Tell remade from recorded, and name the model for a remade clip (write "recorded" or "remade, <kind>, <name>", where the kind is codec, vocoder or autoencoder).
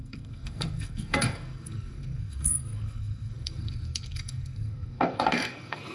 remade, codec, SNAC